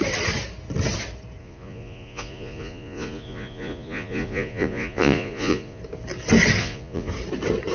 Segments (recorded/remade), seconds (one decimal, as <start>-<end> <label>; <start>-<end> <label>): 0.0-1.4 recorded; 1.4-5.8 remade; 5.8-6.6 recorded; 6.6-7.1 remade; 7.1-7.7 recorded